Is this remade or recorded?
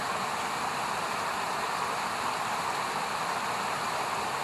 recorded